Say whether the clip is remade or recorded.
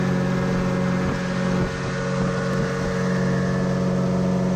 recorded